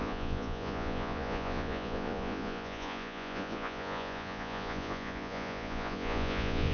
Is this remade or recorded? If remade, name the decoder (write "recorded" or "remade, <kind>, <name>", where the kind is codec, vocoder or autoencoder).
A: remade, vocoder, Vocos